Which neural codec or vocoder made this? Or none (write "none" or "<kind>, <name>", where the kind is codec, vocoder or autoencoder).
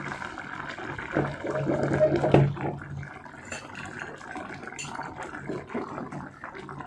none